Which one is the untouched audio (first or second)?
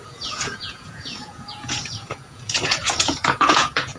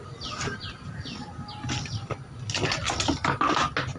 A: second